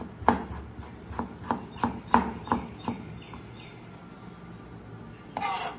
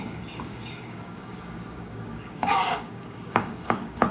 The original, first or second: first